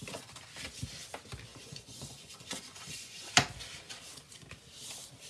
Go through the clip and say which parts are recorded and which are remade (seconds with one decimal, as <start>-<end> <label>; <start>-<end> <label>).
0.0-1.5 recorded; 1.5-3.3 remade; 3.3-5.3 recorded